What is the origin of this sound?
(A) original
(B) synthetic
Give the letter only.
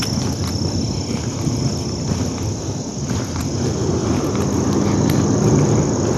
A